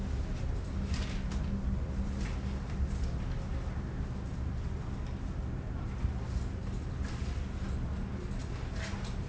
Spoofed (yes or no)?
no